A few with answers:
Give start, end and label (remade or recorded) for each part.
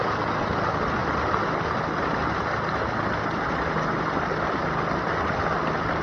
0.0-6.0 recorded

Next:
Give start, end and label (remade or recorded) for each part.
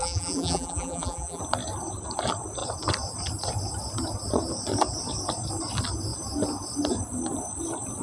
0.0-1.4 remade; 1.4-8.0 recorded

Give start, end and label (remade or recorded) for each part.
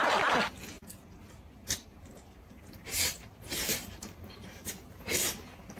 0.0-1.2 recorded; 1.2-4.7 remade; 4.7-5.8 recorded